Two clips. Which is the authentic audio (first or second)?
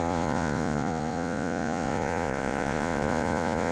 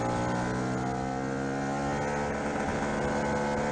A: second